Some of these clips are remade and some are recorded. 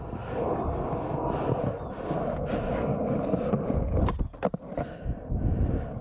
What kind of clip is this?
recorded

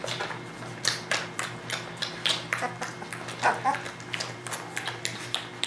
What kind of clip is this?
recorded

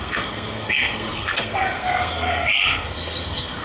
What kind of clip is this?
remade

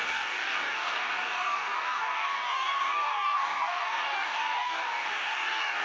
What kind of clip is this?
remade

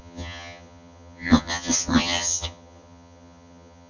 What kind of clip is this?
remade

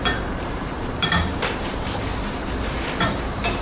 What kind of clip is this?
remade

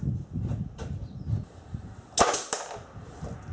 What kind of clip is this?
recorded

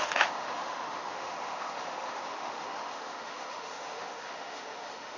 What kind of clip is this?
remade